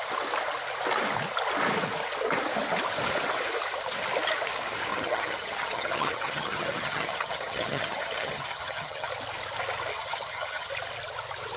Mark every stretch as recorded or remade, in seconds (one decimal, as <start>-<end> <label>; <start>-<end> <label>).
0.0-4.9 recorded; 4.9-9.1 remade; 9.1-9.9 recorded; 9.9-10.7 remade; 10.7-11.6 recorded